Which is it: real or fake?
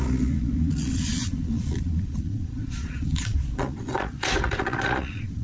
fake